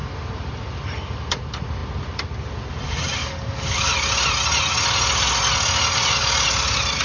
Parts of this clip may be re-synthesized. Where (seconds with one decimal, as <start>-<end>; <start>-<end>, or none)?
3.2-3.9